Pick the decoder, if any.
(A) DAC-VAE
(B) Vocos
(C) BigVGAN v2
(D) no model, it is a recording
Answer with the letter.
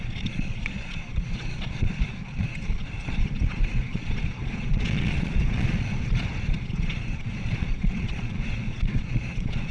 B